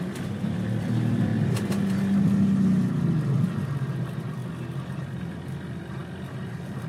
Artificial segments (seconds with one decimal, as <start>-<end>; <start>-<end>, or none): 0.0-1.3; 4.0-4.4; 5.2-6.0; 6.5-6.9